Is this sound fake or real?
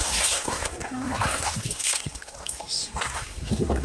fake